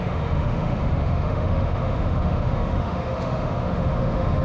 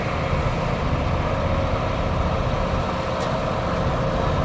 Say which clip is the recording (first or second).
second